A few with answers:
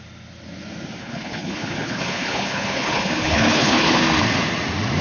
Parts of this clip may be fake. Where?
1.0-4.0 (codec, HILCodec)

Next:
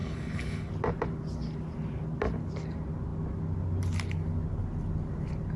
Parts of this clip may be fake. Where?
0.0-0.7 (codec, HILCodec)

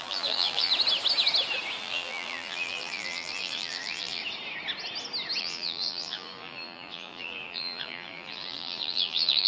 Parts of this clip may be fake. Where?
0.0-0.7 (vocoder, BigVGAN v2); 1.8-4.2; 5.4-9.5

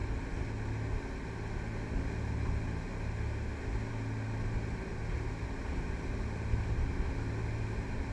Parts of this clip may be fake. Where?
none

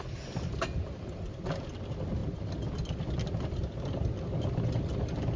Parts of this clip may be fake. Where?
none